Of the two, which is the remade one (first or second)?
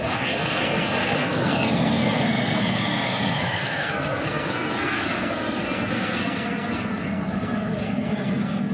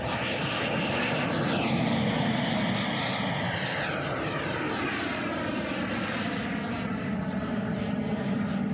first